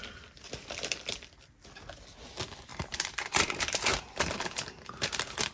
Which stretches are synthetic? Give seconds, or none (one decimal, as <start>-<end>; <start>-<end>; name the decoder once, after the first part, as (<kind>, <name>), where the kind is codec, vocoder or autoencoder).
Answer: 2.7-5.5 (vocoder, BigVGAN v2)